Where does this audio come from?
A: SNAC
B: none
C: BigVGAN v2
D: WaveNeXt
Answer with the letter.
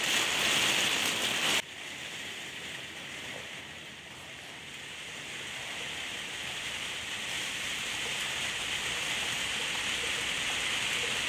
C